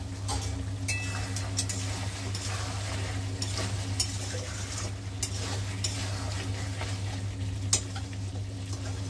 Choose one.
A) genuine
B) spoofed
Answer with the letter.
A